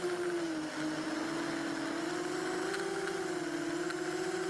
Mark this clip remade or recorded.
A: recorded